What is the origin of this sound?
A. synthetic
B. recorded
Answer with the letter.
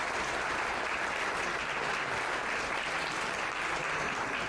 B